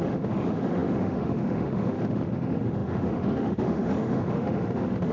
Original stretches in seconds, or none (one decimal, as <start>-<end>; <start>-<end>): none